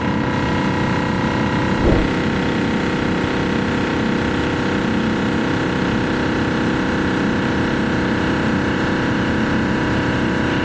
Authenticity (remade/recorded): recorded